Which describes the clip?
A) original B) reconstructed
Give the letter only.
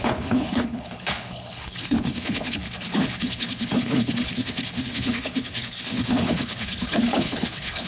B